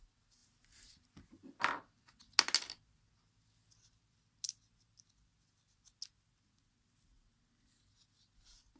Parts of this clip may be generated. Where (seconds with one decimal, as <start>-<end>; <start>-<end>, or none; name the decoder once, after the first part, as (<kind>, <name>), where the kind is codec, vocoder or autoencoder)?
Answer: none